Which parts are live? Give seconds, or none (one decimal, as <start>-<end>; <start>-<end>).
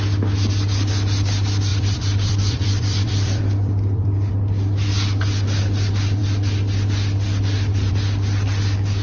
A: 0.0-1.7; 4.3-9.0